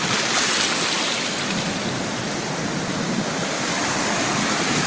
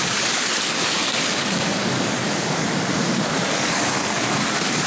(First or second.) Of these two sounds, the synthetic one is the second